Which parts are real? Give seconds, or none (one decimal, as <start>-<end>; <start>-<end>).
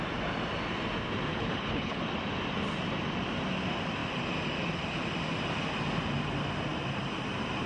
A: 0.0-1.3; 2.0-7.7